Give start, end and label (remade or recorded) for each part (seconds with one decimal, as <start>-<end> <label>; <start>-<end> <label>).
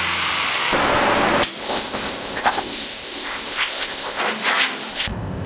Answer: 0.0-1.6 recorded; 1.6-4.2 remade; 4.2-4.9 recorded; 4.9-5.5 remade